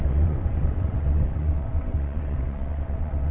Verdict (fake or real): fake